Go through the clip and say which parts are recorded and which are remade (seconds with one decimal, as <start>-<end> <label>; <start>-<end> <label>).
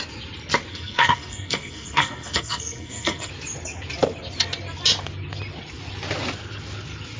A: 0.0-0.7 recorded; 0.7-3.3 remade; 3.3-7.2 recorded